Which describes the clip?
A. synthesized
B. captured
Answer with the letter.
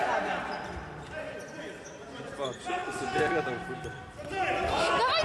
B